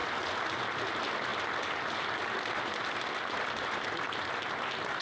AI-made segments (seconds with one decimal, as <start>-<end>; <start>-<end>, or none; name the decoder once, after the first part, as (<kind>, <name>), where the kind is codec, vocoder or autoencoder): none